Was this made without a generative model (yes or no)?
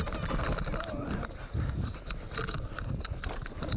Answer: yes